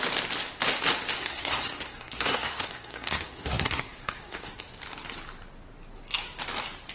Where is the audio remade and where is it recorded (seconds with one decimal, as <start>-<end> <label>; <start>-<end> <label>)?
0.0-1.1 recorded; 1.1-4.6 remade; 4.6-6.9 recorded